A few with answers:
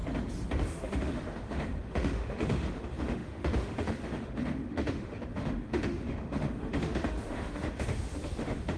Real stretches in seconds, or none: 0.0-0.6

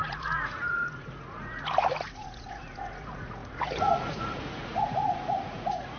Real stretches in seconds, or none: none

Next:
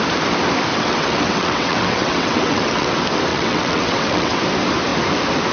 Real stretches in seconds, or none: 0.0-0.7; 2.9-3.3; 4.4-5.5